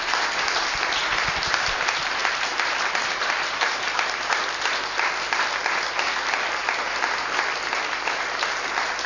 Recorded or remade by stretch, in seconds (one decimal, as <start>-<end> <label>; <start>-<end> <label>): 0.0-9.1 recorded